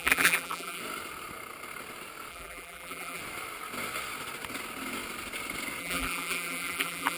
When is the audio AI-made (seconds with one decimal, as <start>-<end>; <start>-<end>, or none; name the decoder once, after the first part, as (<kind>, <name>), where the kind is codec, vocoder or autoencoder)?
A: 0.0-0.8 (vocoder, BigVGAN v2); 2.3-3.2; 5.8-7.2